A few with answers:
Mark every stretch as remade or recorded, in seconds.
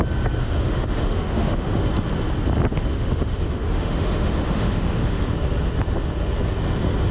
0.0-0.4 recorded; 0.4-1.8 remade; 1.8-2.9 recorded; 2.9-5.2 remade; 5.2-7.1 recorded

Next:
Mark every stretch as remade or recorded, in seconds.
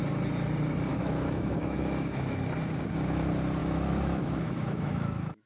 0.0-0.9 recorded; 0.9-2.4 remade; 2.4-3.6 recorded; 3.6-5.5 remade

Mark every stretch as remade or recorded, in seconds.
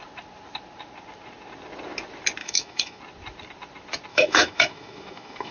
0.0-2.4 recorded; 2.4-3.0 remade; 3.0-4.1 recorded; 4.1-5.5 remade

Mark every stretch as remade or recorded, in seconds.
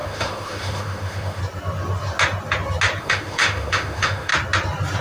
0.0-1.4 remade; 1.4-3.0 recorded; 3.0-4.3 remade; 4.3-5.0 recorded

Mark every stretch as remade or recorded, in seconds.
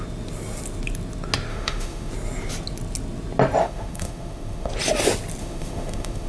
0.0-1.5 recorded; 1.5-2.1 remade; 2.1-3.6 recorded; 3.6-4.7 remade; 4.7-5.4 recorded; 5.4-6.3 remade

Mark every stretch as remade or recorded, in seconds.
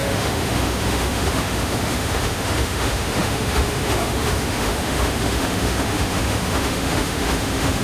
0.0-7.8 remade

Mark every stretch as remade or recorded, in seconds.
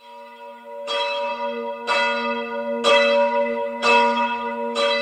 0.0-1.3 remade; 1.3-2.9 recorded; 2.9-5.0 remade